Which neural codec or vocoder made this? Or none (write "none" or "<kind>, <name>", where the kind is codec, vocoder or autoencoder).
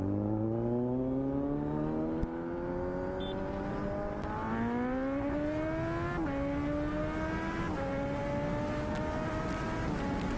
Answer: none